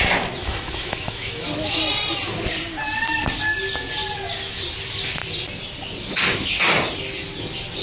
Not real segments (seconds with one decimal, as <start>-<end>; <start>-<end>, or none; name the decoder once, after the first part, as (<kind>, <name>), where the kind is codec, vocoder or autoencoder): 0.4-1.8 (autoencoder, DAC-VAE)